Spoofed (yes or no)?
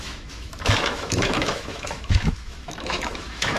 yes